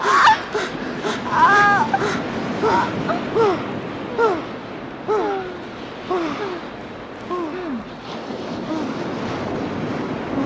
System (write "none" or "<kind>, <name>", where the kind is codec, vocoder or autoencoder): none